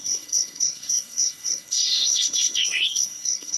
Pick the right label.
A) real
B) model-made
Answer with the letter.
B